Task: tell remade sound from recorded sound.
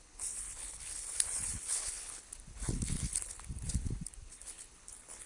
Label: remade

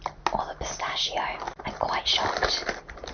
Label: recorded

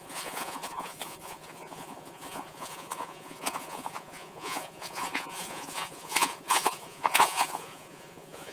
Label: remade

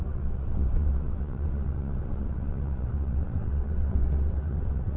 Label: remade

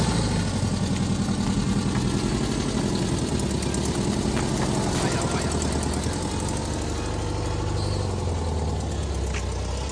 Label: recorded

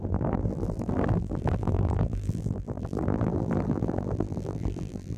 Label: remade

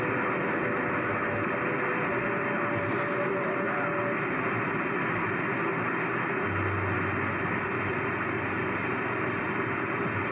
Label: recorded